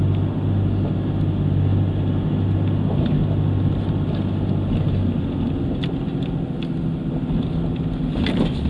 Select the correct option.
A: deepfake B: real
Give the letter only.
B